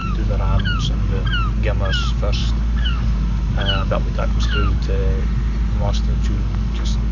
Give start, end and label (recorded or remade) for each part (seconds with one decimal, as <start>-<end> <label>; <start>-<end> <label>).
0.0-1.2 remade; 1.2-2.4 recorded; 2.4-5.2 remade; 5.2-5.8 recorded; 5.8-7.1 remade